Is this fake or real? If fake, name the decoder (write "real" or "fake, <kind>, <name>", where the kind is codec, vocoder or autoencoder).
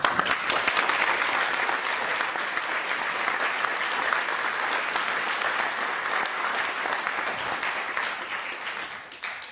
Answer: real